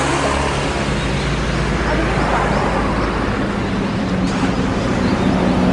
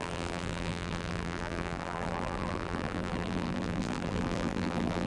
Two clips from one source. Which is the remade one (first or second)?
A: second